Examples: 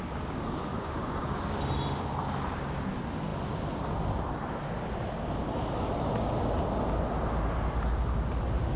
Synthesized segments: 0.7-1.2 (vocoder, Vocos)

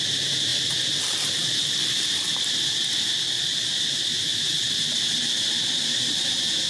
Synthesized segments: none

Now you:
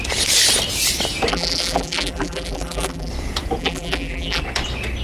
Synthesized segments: 1.3-3.1 (vocoder, BigVGAN v2); 3.6-4.4